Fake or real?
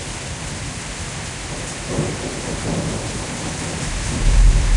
real